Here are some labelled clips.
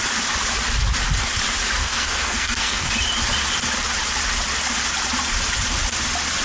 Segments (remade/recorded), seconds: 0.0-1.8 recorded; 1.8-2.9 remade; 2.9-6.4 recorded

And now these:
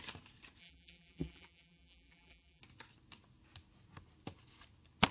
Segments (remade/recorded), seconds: 0.0-0.6 recorded; 0.6-2.6 remade; 2.6-5.1 recorded

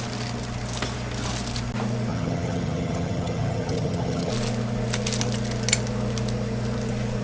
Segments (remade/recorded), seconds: 0.0-2.1 recorded; 2.1-4.3 remade; 4.3-7.2 recorded